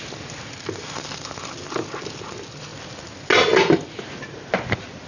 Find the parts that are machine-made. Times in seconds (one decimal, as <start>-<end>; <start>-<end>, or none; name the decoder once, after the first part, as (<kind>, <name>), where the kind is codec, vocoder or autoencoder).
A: none